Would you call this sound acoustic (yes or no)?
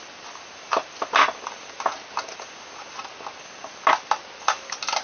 yes